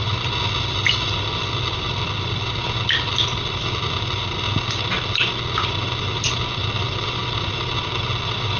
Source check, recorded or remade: recorded